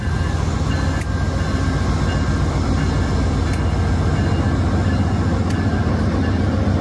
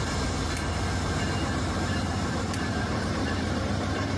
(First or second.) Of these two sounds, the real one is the first